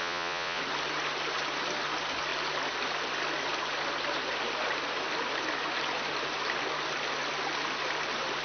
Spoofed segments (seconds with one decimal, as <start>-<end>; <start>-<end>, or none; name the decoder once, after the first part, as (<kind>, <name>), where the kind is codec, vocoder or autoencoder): 0.0-0.6 (vocoder, Vocos)